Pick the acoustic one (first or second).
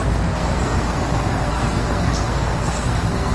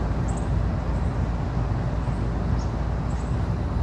second